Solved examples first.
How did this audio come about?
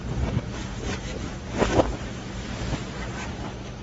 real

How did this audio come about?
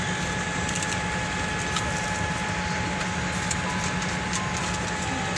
real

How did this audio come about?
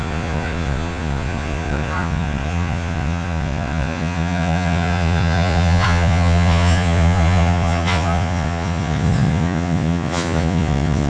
fake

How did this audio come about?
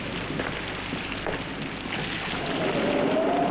real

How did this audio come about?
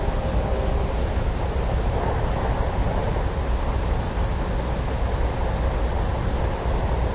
real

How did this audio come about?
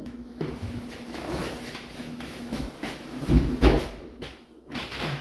fake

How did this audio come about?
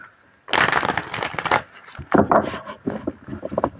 real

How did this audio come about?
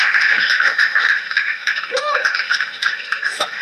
fake